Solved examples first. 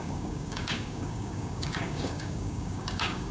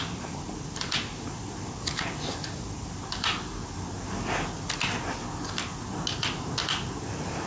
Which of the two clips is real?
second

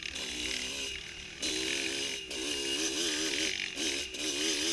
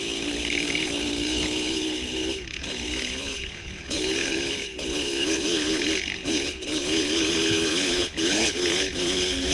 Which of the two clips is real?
first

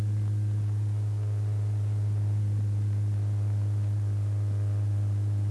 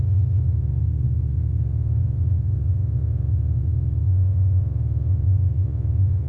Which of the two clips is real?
first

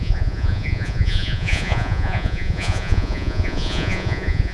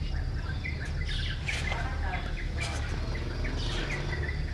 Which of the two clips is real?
second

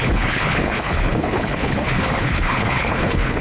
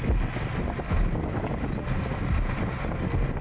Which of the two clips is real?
second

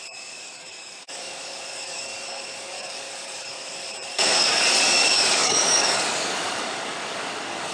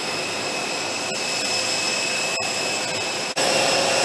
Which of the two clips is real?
second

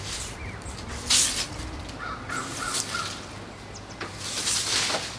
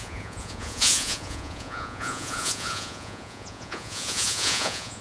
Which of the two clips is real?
first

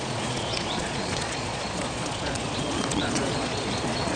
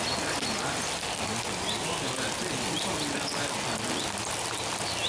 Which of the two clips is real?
second